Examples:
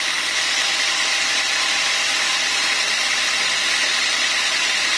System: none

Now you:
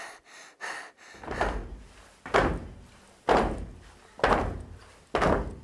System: none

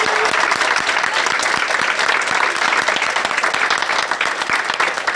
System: none